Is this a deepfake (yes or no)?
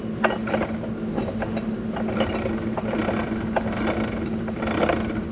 no